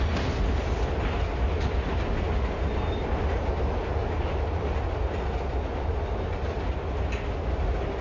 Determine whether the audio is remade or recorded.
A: recorded